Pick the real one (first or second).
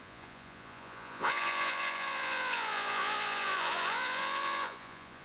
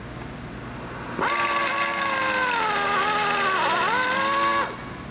second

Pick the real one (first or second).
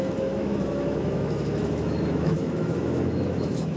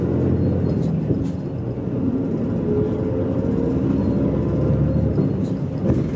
second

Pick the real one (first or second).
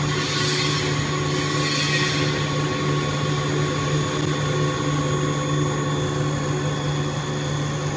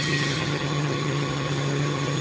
first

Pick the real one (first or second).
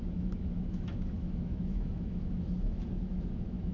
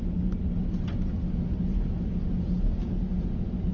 second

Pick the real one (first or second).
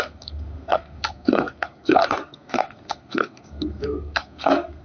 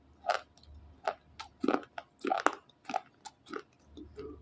second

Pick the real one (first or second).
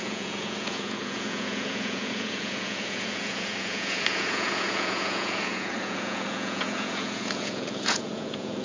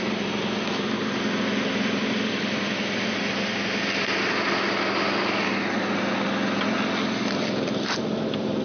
second